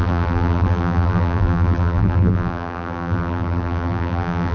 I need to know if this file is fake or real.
fake